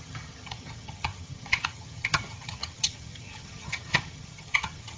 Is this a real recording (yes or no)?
no